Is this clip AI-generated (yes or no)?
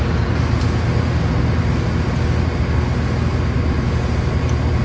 no